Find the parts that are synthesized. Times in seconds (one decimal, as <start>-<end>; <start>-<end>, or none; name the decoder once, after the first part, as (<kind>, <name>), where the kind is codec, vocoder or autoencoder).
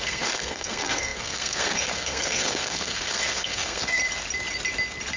0.0-4.0 (codec, SNAC)